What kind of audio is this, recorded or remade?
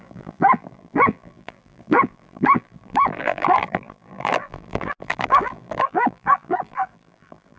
remade